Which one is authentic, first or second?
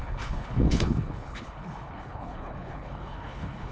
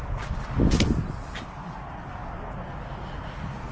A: second